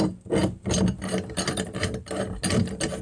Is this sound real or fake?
real